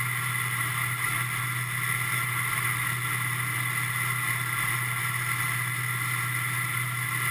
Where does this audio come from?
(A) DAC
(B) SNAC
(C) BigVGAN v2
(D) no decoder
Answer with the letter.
D